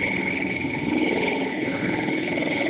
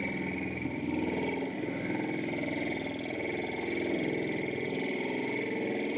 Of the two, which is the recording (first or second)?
second